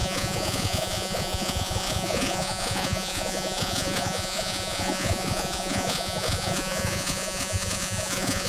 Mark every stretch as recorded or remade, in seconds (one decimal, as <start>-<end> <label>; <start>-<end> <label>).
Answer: 0.0-8.5 remade